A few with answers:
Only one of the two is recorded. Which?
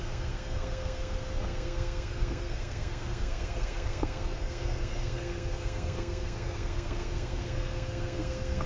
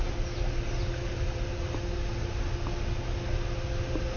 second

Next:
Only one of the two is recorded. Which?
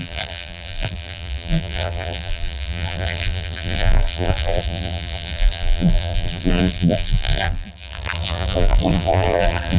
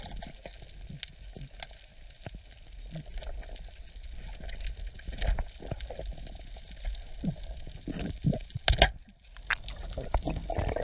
second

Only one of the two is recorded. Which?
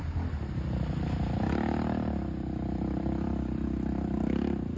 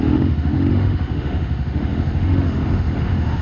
first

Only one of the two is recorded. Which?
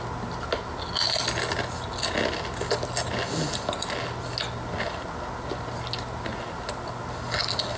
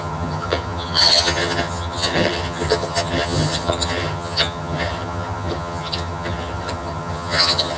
first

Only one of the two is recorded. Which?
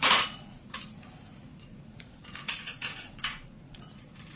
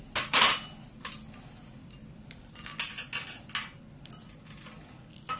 second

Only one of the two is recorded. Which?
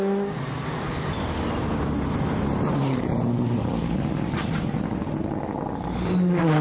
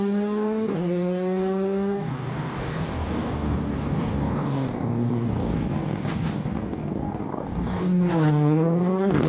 first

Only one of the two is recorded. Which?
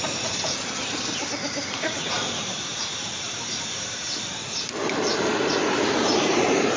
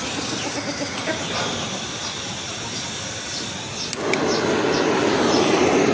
second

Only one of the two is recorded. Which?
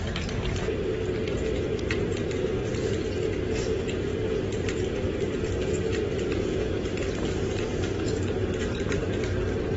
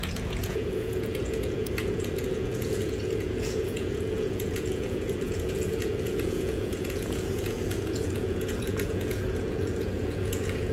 first